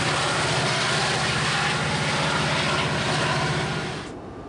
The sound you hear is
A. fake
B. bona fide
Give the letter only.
B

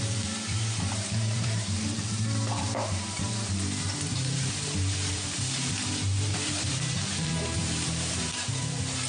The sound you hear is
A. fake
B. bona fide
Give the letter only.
A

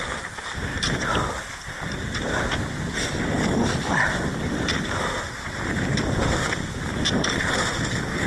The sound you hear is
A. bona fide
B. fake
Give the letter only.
A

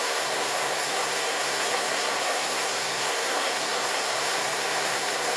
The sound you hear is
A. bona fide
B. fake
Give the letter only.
B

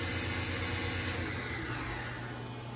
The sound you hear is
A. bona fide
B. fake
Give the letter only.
A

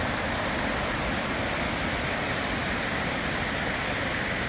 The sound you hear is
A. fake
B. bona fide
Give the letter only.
B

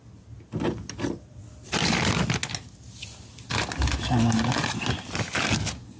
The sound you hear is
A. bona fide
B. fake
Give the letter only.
A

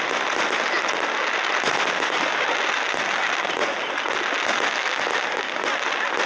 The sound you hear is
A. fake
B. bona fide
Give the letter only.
B